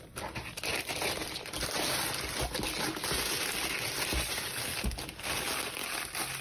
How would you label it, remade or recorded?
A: recorded